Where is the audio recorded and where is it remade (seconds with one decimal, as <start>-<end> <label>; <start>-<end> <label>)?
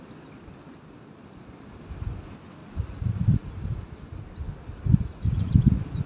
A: 0.0-2.6 recorded; 2.6-3.5 remade; 3.5-4.9 recorded; 4.9-5.5 remade; 5.5-6.1 recorded